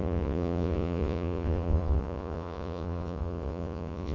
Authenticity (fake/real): fake